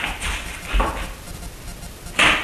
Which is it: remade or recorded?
recorded